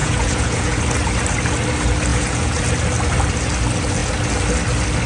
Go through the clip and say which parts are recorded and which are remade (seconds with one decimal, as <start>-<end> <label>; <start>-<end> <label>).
0.0-0.8 remade; 0.8-2.1 recorded; 2.1-2.6 remade; 2.6-5.1 recorded